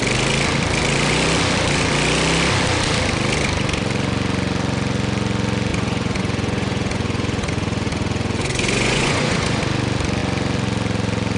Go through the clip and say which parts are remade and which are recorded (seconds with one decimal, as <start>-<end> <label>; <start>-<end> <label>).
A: 0.0-5.7 recorded; 5.7-9.6 remade; 9.6-11.4 recorded